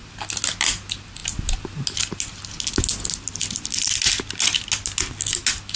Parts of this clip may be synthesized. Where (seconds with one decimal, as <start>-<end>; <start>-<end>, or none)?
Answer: none